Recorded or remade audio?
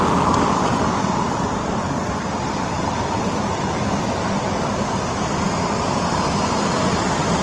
recorded